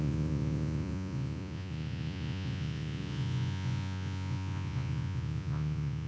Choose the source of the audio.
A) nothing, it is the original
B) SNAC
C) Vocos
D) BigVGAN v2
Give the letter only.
C